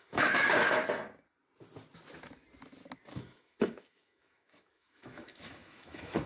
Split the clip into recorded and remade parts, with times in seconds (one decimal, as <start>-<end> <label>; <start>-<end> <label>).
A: 0.0-0.8 remade; 0.8-3.1 recorded; 3.1-6.3 remade